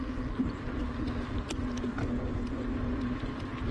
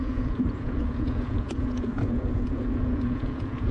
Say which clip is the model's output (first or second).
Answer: second